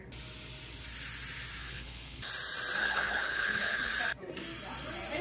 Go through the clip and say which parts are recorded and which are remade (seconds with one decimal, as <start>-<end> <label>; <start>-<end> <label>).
0.0-1.6 recorded; 1.6-2.3 remade; 2.3-2.8 recorded; 2.8-3.9 remade; 3.9-5.2 recorded